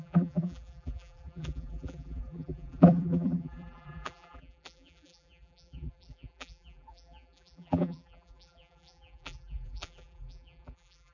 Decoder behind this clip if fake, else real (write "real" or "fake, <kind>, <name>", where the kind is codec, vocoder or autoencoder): fake, vocoder, BigVGAN v2